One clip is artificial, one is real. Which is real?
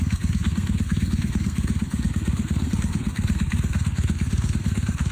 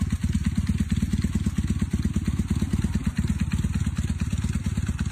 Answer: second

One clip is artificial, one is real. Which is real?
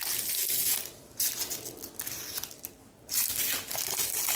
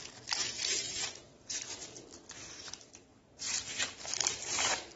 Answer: first